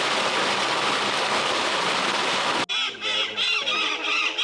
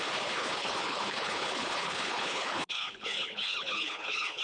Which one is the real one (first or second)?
first